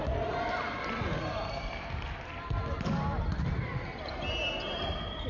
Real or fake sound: real